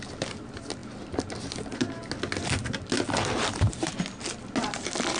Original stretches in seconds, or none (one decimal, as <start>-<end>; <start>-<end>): 0.0-5.2